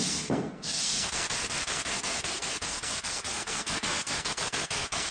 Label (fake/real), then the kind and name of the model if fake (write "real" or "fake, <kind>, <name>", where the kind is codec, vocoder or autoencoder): fake, codec, SNAC